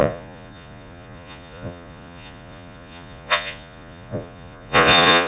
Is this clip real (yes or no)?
no